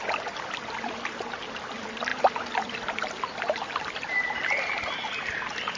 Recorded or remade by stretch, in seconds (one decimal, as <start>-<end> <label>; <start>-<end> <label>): 0.0-5.8 recorded